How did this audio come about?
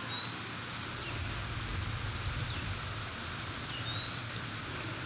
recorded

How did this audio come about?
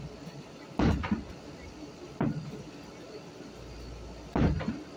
recorded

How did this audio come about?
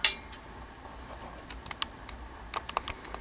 recorded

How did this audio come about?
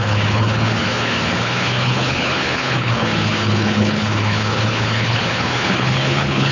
remade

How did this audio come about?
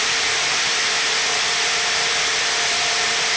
remade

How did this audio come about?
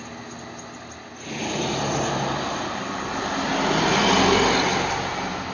recorded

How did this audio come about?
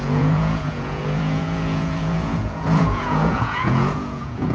remade